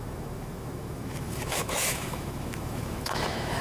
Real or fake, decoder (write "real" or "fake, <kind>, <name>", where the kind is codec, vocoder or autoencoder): fake, autoencoder, DAC-VAE